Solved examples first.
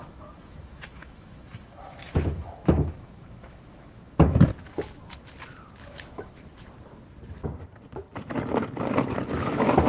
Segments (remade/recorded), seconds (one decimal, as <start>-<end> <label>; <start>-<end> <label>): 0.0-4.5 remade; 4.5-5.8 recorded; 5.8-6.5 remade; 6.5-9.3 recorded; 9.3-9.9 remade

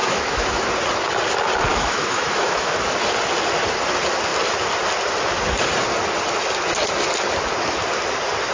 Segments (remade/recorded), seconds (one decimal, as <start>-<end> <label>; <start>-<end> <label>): 0.0-0.6 remade; 0.6-1.7 recorded; 1.7-2.7 remade; 2.7-8.5 recorded

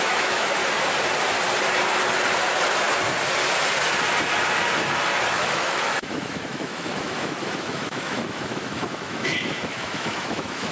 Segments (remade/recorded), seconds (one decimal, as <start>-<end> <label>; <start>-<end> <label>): 0.0-0.6 remade; 0.6-5.3 recorded; 5.3-10.7 remade

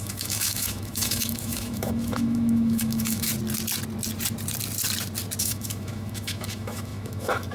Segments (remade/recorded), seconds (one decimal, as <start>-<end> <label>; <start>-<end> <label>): 0.0-3.3 remade; 3.3-5.4 recorded; 5.4-7.5 remade

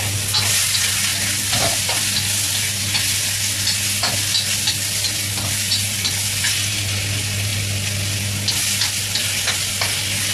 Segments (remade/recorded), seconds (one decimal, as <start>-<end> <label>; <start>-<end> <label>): 0.0-10.3 recorded